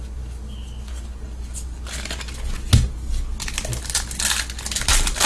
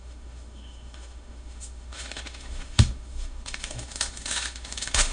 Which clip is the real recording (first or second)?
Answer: first